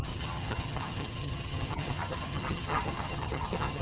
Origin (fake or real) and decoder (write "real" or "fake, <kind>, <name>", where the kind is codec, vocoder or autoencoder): fake, vocoder, HiFi-GAN